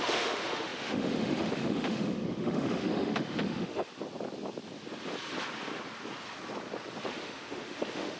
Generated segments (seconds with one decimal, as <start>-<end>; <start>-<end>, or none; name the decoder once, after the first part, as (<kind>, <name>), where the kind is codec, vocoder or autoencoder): 0.0-3.9 (autoencoder, DAC-VAE); 7.1-8.2